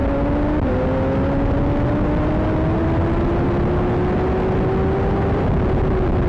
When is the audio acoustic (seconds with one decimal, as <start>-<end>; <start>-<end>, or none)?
0.0-6.3